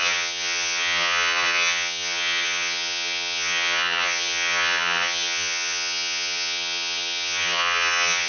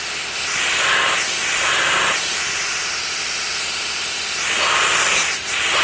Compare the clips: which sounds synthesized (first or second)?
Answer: first